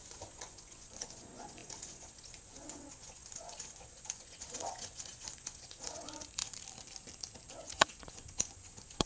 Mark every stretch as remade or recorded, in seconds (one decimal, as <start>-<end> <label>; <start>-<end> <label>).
0.0-6.4 remade; 6.4-7.5 recorded; 7.5-9.1 remade